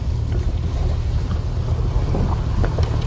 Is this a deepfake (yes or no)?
no